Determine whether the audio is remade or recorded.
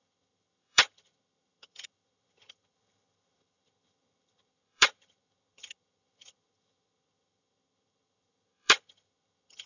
remade